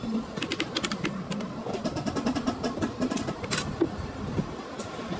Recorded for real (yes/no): yes